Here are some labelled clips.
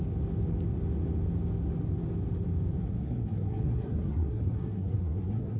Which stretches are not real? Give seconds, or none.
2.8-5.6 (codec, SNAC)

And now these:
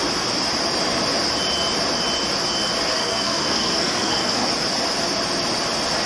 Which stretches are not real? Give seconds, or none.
2.9-4.5 (codec, SNAC)